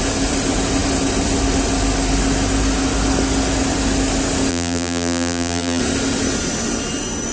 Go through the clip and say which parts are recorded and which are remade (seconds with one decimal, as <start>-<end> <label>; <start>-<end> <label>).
0.0-4.5 recorded; 4.5-5.8 remade; 5.8-7.3 recorded